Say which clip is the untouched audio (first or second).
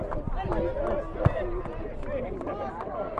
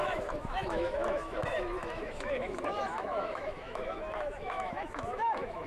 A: first